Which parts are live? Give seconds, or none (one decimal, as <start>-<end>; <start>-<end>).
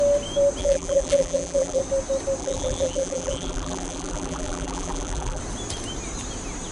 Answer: 0.0-0.6; 1.8-2.4; 5.4-6.7